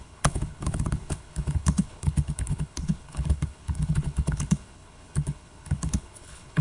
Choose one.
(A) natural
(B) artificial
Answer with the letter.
B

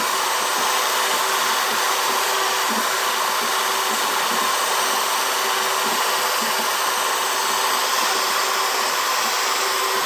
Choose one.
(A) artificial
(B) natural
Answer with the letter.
B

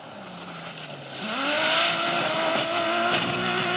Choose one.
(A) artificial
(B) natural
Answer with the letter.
B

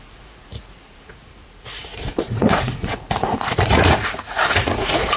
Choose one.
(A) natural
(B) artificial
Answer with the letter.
B